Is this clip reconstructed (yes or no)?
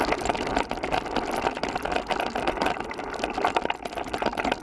no